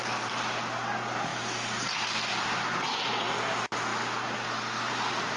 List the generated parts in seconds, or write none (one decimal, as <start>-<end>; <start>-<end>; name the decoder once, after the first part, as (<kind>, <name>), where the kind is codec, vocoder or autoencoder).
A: 2.3-3.1 (vocoder, Vocos)